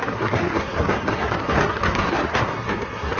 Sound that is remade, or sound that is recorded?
remade